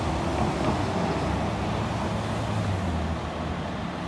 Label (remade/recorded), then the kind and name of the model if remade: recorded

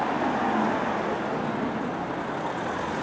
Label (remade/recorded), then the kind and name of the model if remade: recorded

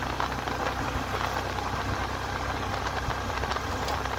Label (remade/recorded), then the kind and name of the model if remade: recorded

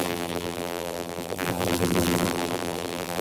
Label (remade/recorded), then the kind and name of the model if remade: remade, vocoder, BigVGAN v2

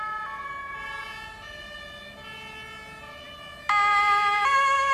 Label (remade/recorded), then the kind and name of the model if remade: recorded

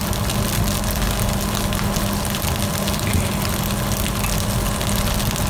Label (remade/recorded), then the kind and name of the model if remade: recorded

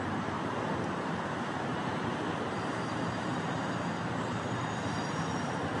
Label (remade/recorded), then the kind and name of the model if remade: remade, vocoder, BigVGAN v2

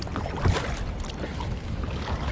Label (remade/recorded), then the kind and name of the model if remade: recorded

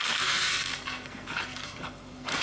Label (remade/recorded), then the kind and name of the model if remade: remade, codec, SNAC